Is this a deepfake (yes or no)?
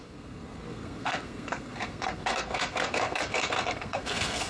yes